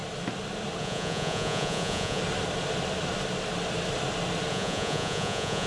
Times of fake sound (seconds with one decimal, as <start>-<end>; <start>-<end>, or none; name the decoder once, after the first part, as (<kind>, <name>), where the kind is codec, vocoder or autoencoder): 0.8-2.2 (vocoder, Vocos); 4.5-5.7